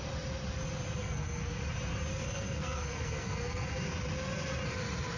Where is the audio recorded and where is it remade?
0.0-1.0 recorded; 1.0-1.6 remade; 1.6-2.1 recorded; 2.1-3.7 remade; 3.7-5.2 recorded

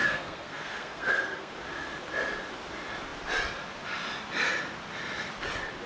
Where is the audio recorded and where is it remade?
0.0-1.5 remade; 1.5-5.9 recorded

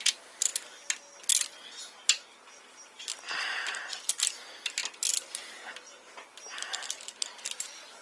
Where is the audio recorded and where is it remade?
0.0-0.5 remade; 0.5-4.3 recorded; 4.3-4.8 remade; 4.8-7.5 recorded; 7.5-8.0 remade

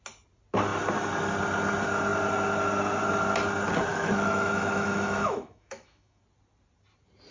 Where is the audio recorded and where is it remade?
0.0-3.9 recorded; 3.9-6.2 remade; 6.2-7.3 recorded